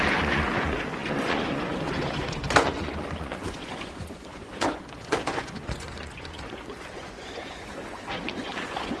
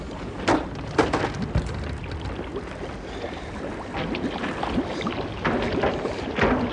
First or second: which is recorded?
second